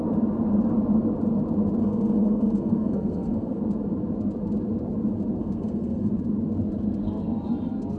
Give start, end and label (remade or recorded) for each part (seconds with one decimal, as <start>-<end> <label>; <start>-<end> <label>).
0.0-1.8 recorded; 1.8-3.6 remade; 3.6-5.4 recorded; 5.4-6.1 remade; 6.1-8.0 recorded